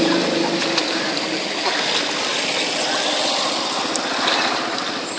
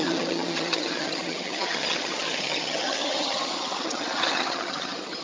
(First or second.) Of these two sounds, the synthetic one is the second